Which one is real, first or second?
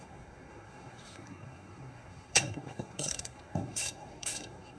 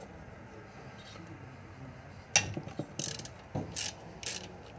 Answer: second